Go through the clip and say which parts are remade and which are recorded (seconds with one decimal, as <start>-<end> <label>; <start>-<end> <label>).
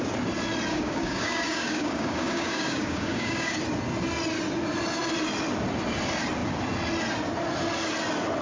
0.0-0.7 recorded; 0.7-3.6 remade; 3.6-8.4 recorded